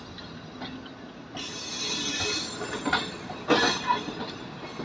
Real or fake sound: real